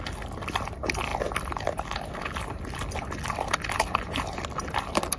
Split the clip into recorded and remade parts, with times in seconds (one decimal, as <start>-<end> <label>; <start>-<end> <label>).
0.0-5.2 recorded